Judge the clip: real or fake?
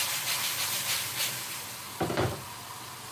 real